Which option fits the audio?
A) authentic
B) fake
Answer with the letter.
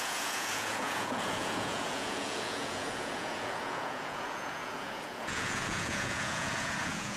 B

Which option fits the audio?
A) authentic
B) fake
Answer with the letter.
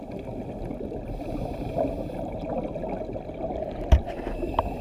A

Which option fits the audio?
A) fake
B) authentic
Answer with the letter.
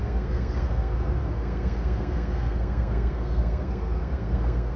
A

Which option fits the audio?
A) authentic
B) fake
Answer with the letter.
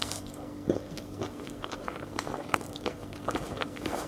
B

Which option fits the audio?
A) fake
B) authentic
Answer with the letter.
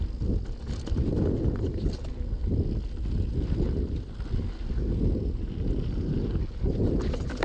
B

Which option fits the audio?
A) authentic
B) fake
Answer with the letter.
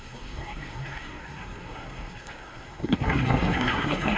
B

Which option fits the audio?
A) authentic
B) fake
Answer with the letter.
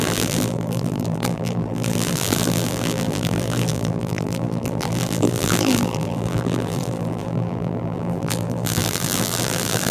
B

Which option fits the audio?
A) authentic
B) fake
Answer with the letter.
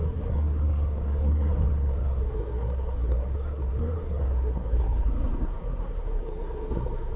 B